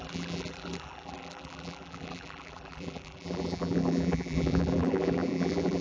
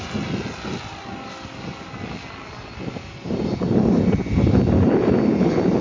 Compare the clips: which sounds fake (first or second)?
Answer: first